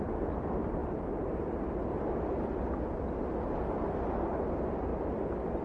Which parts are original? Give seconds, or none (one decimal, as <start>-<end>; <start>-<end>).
0.0-5.6